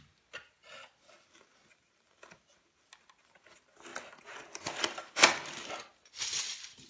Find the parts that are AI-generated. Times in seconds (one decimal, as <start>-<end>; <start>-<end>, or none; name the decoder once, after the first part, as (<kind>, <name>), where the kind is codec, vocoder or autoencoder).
none